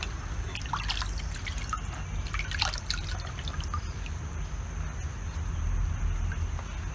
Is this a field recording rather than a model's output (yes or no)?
yes